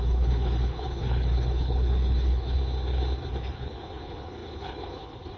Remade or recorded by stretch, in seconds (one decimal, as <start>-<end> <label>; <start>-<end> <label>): 0.0-2.6 remade; 2.6-3.3 recorded; 3.3-5.4 remade